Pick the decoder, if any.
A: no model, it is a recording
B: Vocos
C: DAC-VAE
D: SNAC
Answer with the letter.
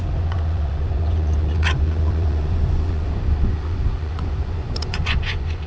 B